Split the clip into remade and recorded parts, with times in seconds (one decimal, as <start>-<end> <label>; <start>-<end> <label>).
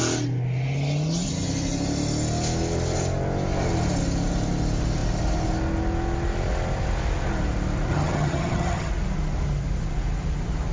0.0-7.9 recorded; 7.9-8.9 remade; 8.9-10.7 recorded